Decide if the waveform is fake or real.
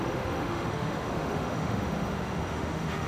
fake